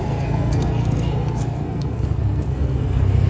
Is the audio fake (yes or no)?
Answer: yes